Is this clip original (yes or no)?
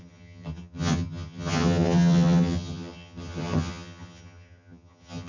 no